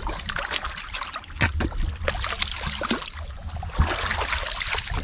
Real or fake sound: real